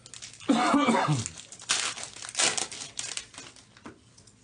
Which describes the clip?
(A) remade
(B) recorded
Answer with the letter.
B